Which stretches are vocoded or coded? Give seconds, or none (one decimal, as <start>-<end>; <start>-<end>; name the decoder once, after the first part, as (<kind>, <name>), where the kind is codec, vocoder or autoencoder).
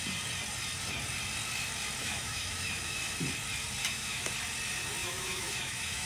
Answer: 2.0-3.0 (autoencoder, DAC-VAE); 3.8-4.3; 5.0-6.1